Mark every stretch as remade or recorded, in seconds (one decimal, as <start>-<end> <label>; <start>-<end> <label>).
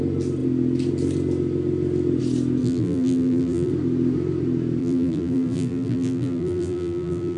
0.0-2.6 recorded; 2.6-3.7 remade; 3.7-4.8 recorded; 4.8-7.4 remade